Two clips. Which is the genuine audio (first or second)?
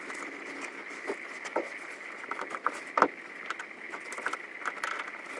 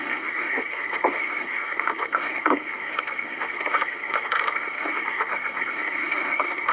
first